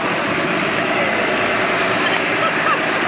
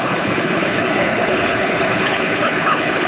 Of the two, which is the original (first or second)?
first